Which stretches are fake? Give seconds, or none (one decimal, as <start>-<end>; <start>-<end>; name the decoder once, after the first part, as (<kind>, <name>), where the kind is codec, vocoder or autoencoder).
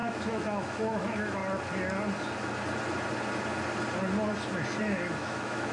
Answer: 0.0-1.4 (autoencoder, DAC-VAE); 4.8-5.7